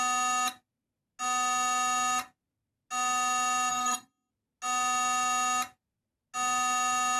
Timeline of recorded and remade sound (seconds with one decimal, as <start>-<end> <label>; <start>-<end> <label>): 0.0-3.7 recorded; 3.7-4.3 remade; 4.3-7.2 recorded